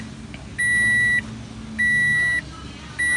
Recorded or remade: recorded